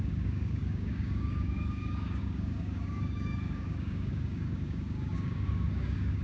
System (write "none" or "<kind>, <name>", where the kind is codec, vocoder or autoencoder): codec, DAC